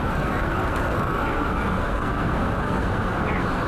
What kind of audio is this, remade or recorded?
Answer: remade